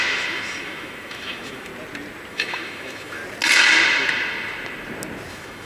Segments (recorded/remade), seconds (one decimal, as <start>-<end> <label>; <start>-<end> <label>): 0.0-1.7 remade; 1.7-2.3 recorded; 2.3-3.2 remade; 3.2-5.3 recorded; 5.3-5.7 remade